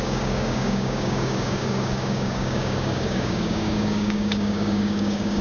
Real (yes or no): no